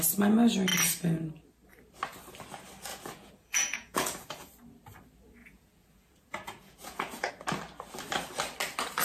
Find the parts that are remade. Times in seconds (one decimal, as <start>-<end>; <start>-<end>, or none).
2.9-4.5; 5.4-7.3